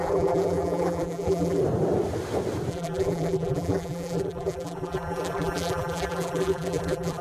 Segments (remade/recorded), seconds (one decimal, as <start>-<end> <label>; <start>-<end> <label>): 0.0-1.6 remade; 1.6-2.7 recorded; 2.7-7.2 remade